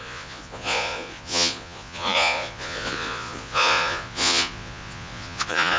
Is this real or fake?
fake